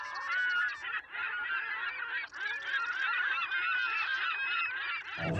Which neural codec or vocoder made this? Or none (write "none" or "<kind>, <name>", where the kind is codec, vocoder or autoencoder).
none